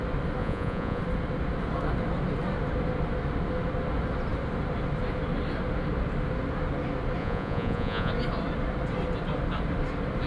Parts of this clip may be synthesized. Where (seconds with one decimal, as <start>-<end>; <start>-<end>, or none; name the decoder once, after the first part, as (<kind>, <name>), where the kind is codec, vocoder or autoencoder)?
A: 0.4-1.0 (vocoder, Vocos); 7.2-8.1